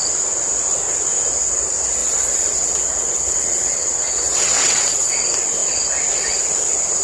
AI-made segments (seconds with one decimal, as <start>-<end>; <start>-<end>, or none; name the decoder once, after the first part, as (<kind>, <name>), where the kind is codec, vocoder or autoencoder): 2.0-5.1 (vocoder, WaveNeXt)